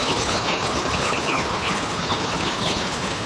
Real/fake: fake